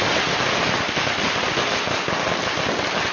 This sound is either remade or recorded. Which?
recorded